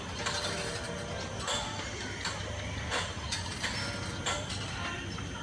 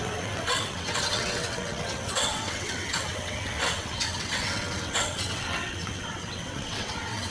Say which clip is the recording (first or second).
first